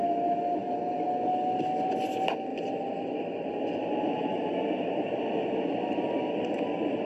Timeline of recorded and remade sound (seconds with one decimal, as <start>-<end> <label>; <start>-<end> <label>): 0.0-2.5 recorded; 2.5-4.7 remade; 4.7-7.0 recorded